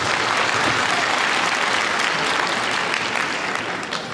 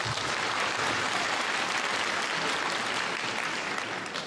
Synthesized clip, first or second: second